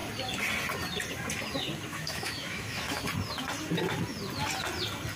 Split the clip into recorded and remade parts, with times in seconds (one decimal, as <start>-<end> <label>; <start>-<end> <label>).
0.0-1.9 recorded; 1.9-3.0 remade; 3.0-5.2 recorded